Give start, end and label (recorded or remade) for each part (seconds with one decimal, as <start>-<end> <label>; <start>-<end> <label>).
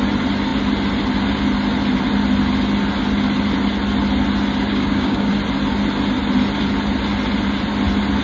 0.0-4.7 recorded; 4.7-5.3 remade; 5.3-8.2 recorded